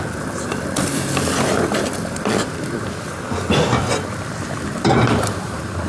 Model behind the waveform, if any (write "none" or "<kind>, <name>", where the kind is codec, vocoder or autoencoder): none